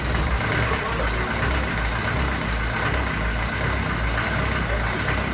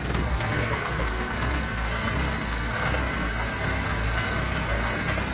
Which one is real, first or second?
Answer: first